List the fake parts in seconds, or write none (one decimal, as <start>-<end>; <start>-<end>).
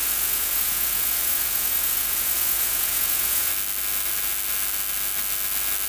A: 0.0-3.5